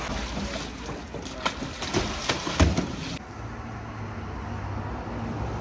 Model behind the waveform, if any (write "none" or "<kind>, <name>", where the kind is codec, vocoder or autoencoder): none